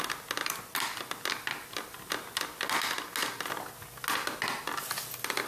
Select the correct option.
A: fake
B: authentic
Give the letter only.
B